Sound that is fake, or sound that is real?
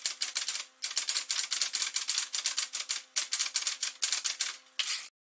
real